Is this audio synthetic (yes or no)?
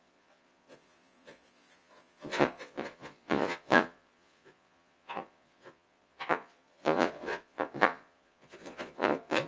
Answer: yes